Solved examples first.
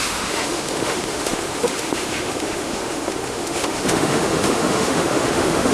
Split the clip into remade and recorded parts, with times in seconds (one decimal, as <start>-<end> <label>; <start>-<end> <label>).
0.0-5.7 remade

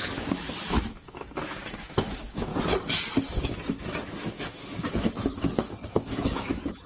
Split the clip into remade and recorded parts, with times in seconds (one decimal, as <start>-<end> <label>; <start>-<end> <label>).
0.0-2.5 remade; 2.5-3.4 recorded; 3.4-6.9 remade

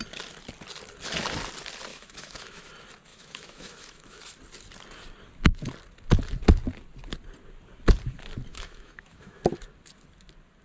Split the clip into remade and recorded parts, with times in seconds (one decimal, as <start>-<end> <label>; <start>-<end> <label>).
0.0-1.9 recorded; 1.9-2.7 remade; 2.7-3.1 recorded; 3.1-4.2 remade; 4.2-8.5 recorded; 8.5-9.4 remade; 9.4-10.6 recorded

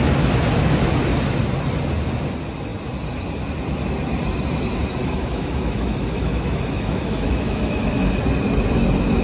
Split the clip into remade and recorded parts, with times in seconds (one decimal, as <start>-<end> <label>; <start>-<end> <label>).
0.0-5.0 recorded; 5.0-8.2 remade; 8.2-9.2 recorded

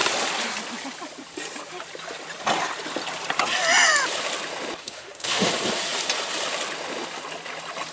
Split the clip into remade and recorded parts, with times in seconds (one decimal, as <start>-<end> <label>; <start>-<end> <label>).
0.0-4.8 recorded; 4.8-5.5 remade; 5.5-7.9 recorded

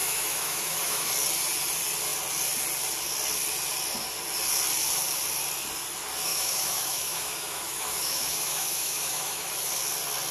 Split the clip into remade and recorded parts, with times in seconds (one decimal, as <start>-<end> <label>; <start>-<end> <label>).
0.0-1.1 remade; 1.1-6.3 recorded; 6.3-9.5 remade; 9.5-10.3 recorded